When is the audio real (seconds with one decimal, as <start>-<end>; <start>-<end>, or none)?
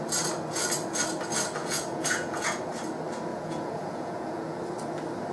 0.0-1.6; 2.6-3.3; 4.6-5.3